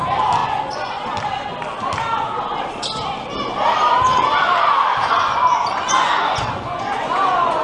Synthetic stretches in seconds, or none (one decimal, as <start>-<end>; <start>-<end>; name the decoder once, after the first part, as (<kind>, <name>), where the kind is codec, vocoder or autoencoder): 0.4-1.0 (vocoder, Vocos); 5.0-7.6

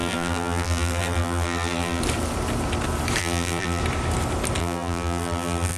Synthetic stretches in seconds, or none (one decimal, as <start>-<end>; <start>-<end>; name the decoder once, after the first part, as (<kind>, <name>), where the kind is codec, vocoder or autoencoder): 0.0-2.0 (vocoder, BigVGAN v2); 3.2-3.8; 4.6-5.8

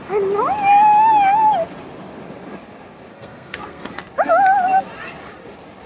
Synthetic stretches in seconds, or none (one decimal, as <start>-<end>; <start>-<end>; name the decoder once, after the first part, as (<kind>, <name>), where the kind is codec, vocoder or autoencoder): 3.1-3.9 (codec, SNAC)

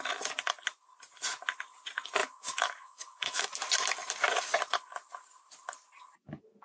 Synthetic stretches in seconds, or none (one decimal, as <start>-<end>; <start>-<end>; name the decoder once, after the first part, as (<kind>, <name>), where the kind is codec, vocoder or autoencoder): 2.2-3.4 (autoencoder, DAC-VAE)

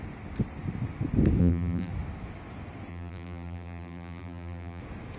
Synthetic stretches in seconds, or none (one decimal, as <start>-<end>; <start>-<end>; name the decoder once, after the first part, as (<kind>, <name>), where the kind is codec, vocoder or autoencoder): 1.4-1.9 (vocoder, BigVGAN v2); 2.9-4.8

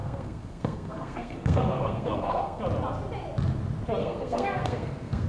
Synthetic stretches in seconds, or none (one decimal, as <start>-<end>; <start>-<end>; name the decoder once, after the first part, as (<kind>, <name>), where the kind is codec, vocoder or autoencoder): 0.0-2.6 (codec, SNAC); 4.0-5.3